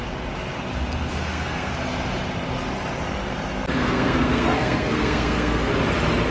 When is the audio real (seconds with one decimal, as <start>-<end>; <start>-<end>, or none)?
0.0-1.1; 1.7-3.8; 5.7-6.3